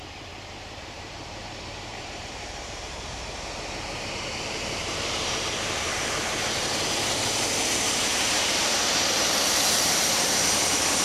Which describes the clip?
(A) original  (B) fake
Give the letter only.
B